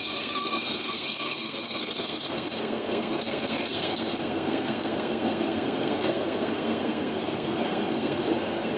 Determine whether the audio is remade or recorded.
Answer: remade